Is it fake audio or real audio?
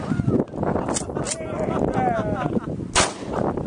real